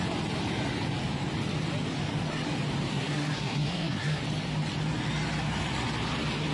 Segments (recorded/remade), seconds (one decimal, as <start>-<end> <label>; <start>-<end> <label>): 0.0-2.9 recorded; 2.9-4.2 remade; 4.2-6.5 recorded